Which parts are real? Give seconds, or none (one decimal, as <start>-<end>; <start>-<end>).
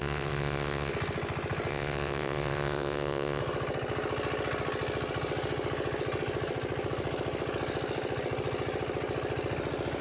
0.9-1.7; 3.4-10.0